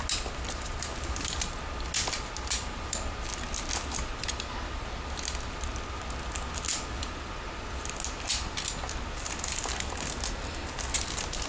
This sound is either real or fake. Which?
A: real